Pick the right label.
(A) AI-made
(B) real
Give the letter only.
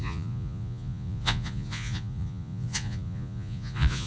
A